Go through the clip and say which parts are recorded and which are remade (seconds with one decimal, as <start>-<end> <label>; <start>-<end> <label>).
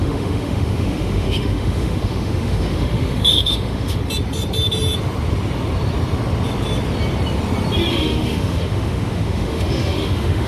0.0-4.0 remade; 4.0-7.9 recorded; 7.9-10.5 remade